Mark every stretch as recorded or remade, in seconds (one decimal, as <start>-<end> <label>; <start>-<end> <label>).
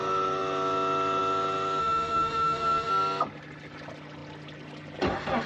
0.0-1.8 recorded; 1.8-2.9 remade; 2.9-5.5 recorded